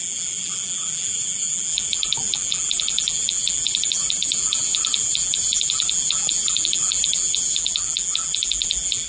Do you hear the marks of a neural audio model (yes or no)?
yes